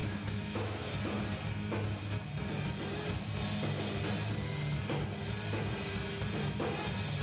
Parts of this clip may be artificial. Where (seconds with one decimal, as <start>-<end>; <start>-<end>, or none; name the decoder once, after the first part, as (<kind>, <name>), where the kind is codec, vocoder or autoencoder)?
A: 0.0-0.9 (autoencoder, DAC-VAE)